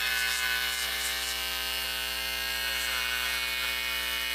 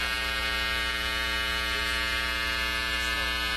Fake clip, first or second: first